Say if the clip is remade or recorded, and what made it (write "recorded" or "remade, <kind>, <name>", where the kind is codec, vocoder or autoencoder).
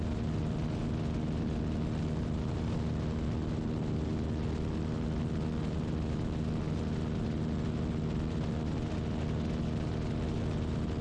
recorded